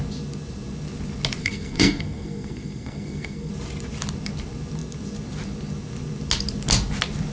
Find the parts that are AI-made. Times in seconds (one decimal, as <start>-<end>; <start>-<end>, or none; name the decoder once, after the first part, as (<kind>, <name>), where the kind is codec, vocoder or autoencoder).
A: 1.4-3.5 (codec, SNAC)